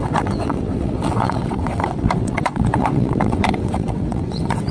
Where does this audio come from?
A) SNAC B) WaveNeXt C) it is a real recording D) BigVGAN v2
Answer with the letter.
B